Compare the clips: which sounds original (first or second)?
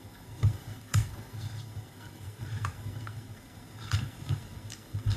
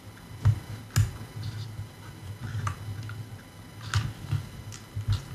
second